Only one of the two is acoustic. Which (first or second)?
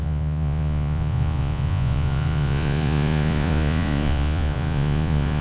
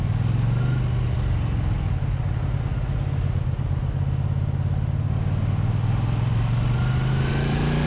second